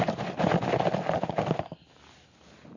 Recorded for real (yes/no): yes